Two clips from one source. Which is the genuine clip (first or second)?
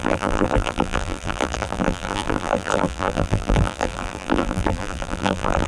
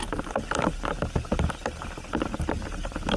second